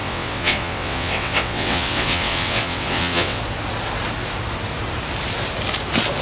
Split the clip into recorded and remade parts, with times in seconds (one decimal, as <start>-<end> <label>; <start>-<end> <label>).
0.0-3.4 remade; 3.4-6.2 recorded